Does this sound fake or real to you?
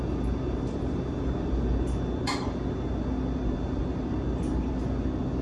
real